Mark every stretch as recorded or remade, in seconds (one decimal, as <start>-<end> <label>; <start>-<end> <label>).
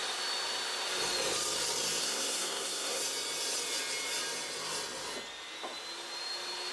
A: 0.0-2.0 recorded; 2.0-3.0 remade; 3.0-6.7 recorded